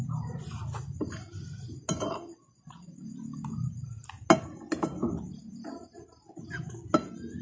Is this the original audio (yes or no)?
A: yes